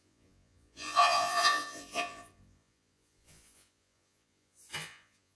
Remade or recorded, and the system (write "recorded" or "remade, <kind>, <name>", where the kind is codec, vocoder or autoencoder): remade, vocoder, Vocos